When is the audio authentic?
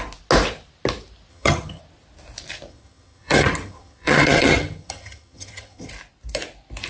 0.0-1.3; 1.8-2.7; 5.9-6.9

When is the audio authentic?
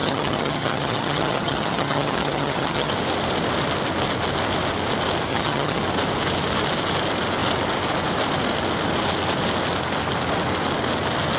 2.9-5.3; 5.8-11.4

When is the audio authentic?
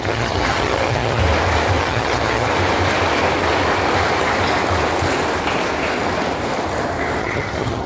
1.2-1.8; 2.5-7.2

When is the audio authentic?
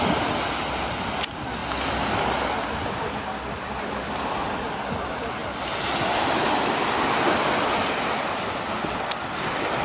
0.0-9.8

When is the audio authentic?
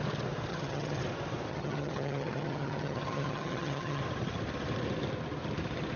0.0-0.5; 1.0-1.5; 4.0-6.0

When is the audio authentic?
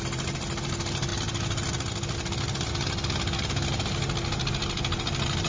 0.0-5.5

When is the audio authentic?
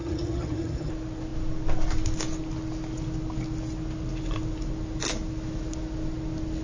0.9-6.6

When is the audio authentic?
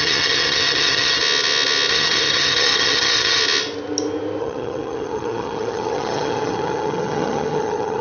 1.2-1.9; 3.4-4.4